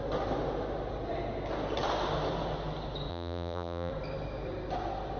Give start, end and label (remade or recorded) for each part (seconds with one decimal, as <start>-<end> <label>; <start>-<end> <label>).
0.0-3.1 recorded; 3.1-3.9 remade; 3.9-5.2 recorded